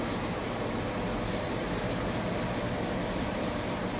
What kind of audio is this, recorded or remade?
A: recorded